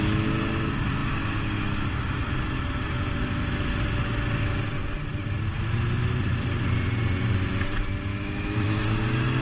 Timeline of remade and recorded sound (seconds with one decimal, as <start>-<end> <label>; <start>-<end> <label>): 0.0-8.1 recorded; 8.1-8.8 remade; 8.8-9.4 recorded